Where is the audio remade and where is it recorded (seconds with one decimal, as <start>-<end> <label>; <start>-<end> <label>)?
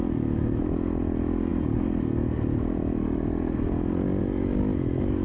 0.0-5.2 recorded